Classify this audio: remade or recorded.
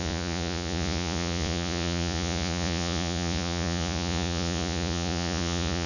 remade